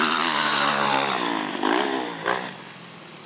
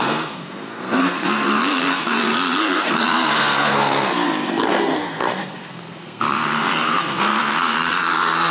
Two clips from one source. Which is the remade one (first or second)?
second